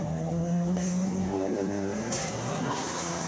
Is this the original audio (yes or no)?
no